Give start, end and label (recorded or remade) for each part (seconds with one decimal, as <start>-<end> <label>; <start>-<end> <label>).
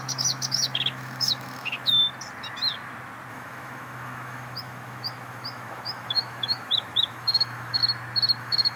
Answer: 0.0-2.0 remade; 2.0-3.3 recorded; 3.3-7.8 remade; 7.8-8.4 recorded; 8.4-8.8 remade